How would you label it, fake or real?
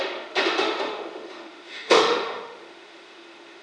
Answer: fake